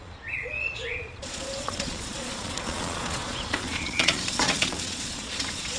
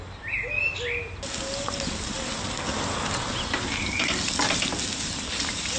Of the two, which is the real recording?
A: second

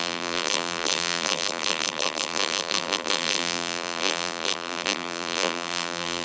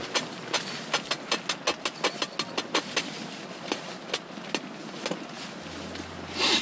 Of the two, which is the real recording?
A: second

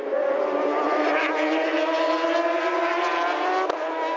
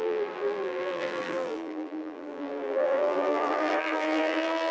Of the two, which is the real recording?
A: first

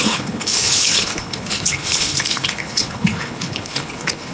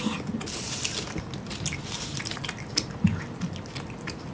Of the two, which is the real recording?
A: second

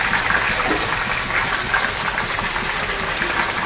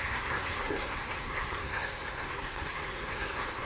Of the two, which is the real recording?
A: first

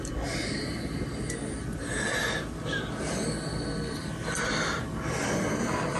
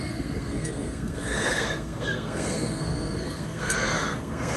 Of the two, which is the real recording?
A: first